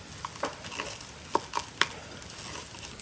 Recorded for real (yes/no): yes